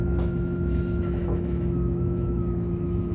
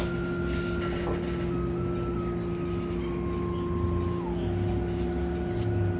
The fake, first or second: first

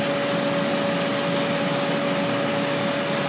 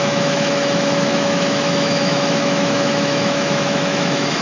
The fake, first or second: second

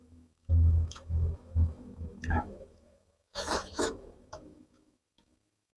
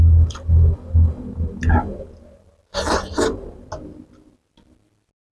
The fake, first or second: first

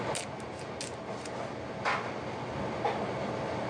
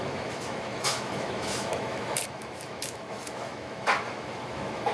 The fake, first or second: second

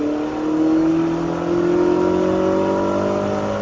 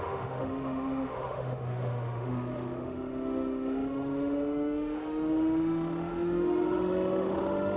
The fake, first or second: second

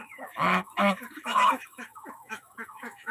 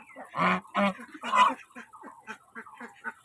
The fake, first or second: first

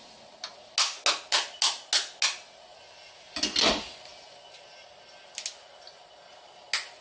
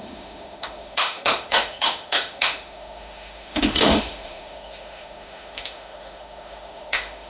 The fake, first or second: second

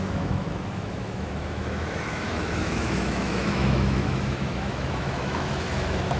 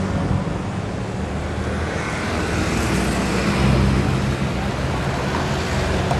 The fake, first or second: first